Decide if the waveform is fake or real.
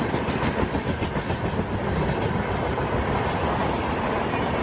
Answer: fake